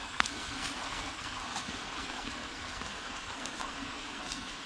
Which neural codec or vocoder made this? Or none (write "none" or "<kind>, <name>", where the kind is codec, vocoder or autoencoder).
codec, SNAC